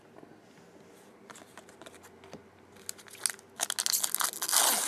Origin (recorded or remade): recorded